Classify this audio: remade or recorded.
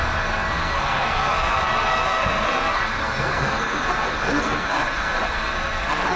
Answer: remade